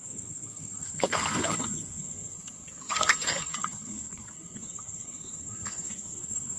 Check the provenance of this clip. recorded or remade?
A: remade